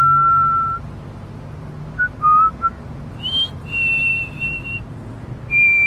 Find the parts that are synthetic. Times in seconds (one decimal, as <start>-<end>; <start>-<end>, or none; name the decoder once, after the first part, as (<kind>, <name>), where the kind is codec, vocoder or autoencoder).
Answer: none